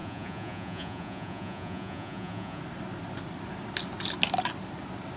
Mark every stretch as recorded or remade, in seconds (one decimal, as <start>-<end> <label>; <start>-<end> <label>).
0.0-2.6 remade; 2.6-5.2 recorded